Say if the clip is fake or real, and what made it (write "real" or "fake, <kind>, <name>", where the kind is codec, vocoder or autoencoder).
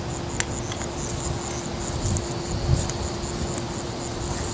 real